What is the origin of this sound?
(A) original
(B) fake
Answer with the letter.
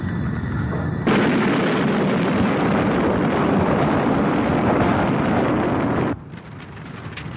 A